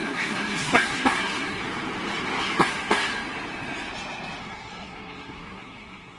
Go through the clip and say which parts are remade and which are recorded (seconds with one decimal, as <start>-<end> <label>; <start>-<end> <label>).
0.0-1.6 remade; 1.6-2.4 recorded; 2.4-3.1 remade; 3.1-4.4 recorded; 4.4-6.2 remade

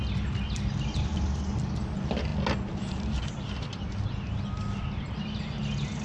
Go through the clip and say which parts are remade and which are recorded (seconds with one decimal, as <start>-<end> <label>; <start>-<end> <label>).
0.0-6.0 recorded

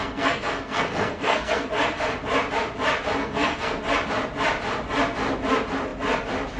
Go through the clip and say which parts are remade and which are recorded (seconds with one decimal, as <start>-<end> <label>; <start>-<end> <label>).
0.0-1.7 remade; 1.7-3.2 recorded; 3.2-3.8 remade; 3.8-6.6 recorded

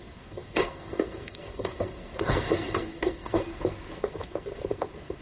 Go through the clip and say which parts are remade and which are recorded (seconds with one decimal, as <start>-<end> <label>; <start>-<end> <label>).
0.0-5.2 remade